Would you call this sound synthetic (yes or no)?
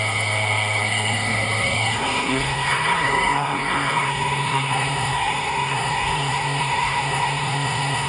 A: yes